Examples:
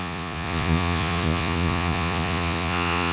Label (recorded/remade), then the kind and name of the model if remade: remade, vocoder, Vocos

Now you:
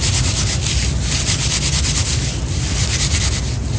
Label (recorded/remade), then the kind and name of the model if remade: recorded